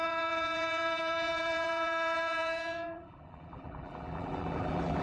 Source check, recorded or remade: remade